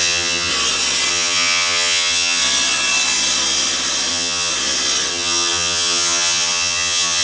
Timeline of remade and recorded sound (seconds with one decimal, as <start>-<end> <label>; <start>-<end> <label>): 0.0-0.5 remade; 0.5-1.1 recorded; 1.1-2.4 remade; 2.4-4.1 recorded; 4.1-4.5 remade; 4.5-5.1 recorded; 5.1-7.2 remade